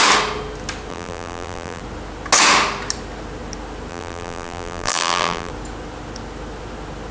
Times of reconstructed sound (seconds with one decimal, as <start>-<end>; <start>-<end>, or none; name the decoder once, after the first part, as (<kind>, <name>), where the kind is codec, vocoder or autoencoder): 0.9-1.8 (vocoder, BigVGAN v2); 3.9-5.5